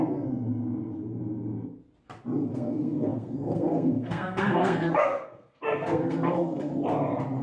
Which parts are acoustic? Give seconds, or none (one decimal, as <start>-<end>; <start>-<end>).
1.2-2.5; 6.7-7.4